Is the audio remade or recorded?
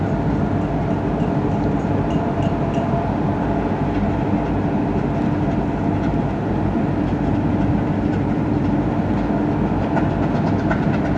recorded